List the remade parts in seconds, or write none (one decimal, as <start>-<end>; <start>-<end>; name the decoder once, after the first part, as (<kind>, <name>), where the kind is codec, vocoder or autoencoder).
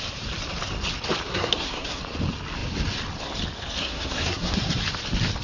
1.3-2.0 (codec, SNAC); 3.8-4.8